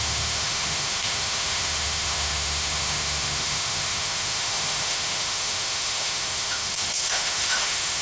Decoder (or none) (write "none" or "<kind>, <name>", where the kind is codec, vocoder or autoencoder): autoencoder, DAC-VAE